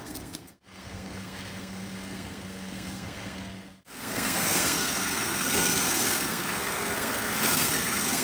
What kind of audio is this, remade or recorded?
remade